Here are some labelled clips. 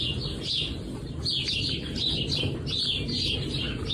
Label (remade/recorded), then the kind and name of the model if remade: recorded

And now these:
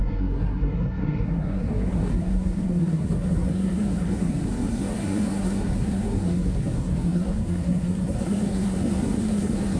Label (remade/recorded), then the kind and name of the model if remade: remade, codec, SNAC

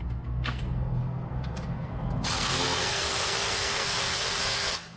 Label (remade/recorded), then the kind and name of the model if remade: remade, codec, SNAC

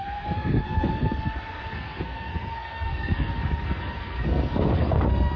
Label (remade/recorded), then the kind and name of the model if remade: remade, codec, SNAC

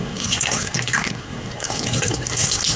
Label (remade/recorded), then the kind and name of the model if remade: remade, codec, SNAC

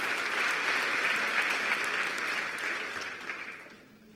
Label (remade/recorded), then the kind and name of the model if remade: recorded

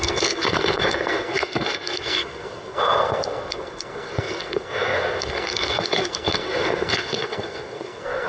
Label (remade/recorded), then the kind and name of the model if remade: remade, codec, SNAC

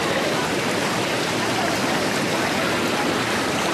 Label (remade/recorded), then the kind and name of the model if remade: recorded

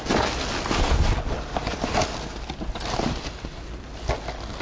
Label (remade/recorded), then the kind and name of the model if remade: recorded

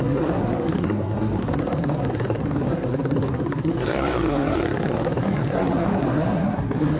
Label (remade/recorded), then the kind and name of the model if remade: remade, codec, SNAC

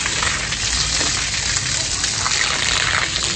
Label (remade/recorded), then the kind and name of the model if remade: recorded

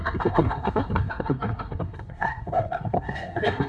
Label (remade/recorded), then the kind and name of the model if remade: remade, codec, SNAC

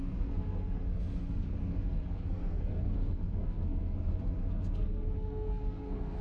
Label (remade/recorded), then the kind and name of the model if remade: remade, codec, SNAC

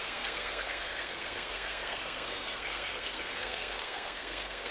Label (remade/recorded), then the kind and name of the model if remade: remade, codec, SNAC